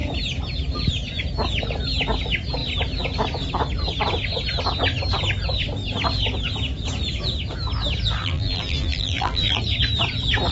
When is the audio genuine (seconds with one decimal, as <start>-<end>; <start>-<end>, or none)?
0.0-8.2; 9.6-10.5